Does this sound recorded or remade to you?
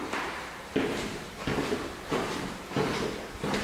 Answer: remade